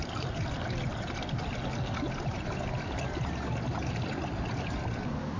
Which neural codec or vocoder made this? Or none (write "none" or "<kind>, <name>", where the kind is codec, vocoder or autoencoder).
none